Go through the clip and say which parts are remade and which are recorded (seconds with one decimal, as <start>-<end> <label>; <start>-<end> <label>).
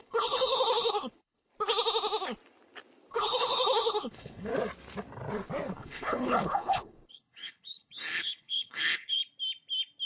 0.0-1.5 remade; 1.5-3.1 recorded; 3.1-4.5 remade; 4.5-5.7 recorded; 5.7-9.2 remade; 9.2-10.1 recorded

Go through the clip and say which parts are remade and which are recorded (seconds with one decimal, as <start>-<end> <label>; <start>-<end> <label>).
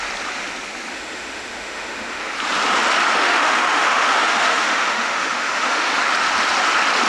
0.0-0.9 recorded; 0.9-2.2 remade; 2.2-3.2 recorded; 3.2-6.0 remade; 6.0-7.1 recorded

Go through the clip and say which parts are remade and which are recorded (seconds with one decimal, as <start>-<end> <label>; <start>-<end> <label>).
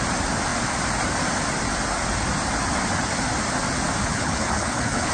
0.0-4.0 recorded; 4.0-5.1 remade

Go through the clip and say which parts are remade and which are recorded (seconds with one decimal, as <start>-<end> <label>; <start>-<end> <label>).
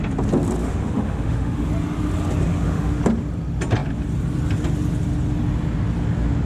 0.0-0.6 recorded; 0.6-1.7 remade; 1.7-2.5 recorded; 2.5-3.0 remade; 3.0-6.5 recorded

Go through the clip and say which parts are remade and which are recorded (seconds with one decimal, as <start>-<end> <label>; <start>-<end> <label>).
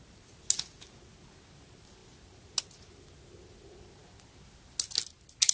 0.0-5.5 recorded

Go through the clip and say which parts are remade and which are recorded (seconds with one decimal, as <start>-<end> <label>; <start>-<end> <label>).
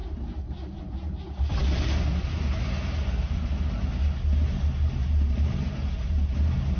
0.0-6.8 recorded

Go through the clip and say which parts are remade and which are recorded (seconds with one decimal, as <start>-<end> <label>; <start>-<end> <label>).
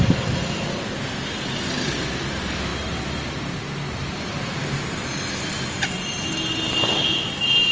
0.0-7.7 recorded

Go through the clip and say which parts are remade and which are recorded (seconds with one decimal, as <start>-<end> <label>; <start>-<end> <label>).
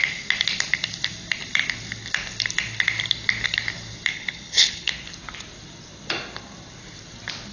0.0-4.1 recorded; 4.1-4.9 remade; 4.9-7.5 recorded